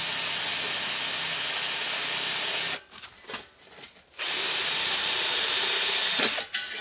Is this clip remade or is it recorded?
recorded